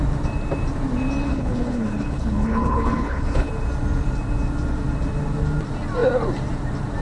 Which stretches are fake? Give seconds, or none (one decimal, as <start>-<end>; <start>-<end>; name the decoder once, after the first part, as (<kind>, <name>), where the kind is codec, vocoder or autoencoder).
1.3-3.5 (codec, HILCodec)